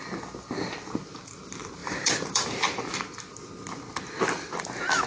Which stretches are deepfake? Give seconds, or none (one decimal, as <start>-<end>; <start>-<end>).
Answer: 1.8-2.8